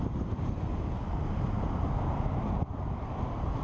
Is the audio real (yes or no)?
yes